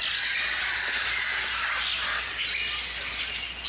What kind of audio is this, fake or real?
real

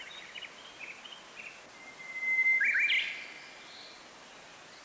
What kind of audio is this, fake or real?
real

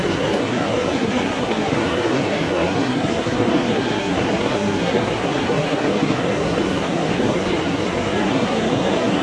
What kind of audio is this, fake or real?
fake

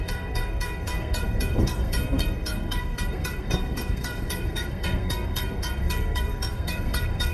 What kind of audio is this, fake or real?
fake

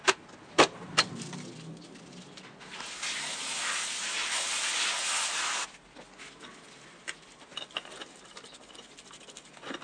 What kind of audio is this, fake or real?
real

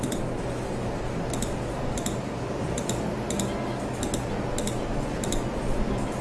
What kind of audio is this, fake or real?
real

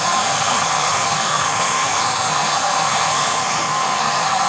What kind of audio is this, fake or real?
fake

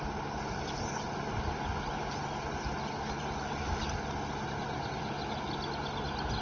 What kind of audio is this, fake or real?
real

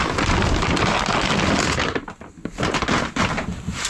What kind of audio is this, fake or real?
real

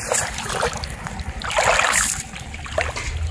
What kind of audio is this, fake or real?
real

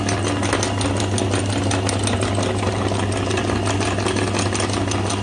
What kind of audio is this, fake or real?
real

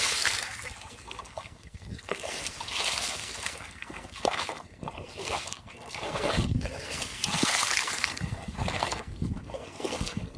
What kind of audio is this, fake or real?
fake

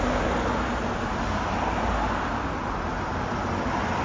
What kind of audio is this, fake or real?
real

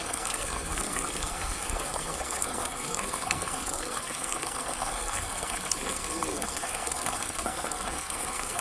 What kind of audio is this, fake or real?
fake